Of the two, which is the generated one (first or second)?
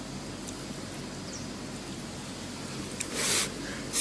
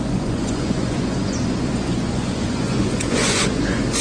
second